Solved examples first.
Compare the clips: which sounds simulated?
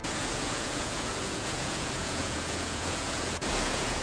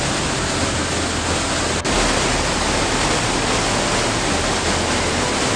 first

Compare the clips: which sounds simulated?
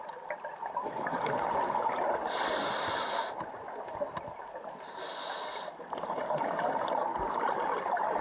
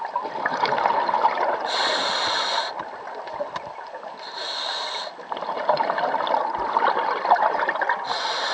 second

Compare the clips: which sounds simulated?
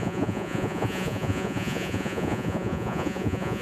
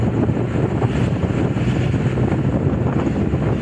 first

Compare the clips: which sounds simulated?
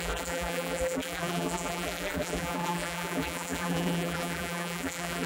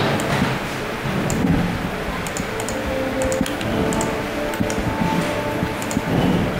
first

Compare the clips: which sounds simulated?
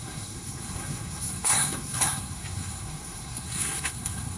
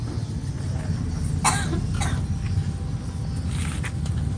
first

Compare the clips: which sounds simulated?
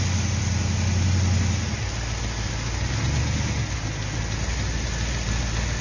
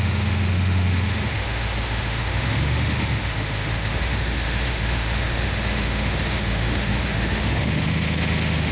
second